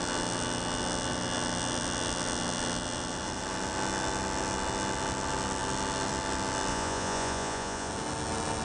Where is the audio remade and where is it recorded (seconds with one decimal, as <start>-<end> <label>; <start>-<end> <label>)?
0.0-6.7 recorded; 6.7-7.9 remade; 7.9-8.6 recorded